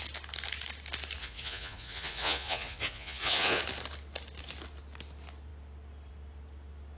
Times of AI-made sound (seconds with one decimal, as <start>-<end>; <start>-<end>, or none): 1.2-3.6